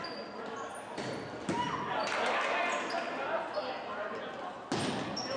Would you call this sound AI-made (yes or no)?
no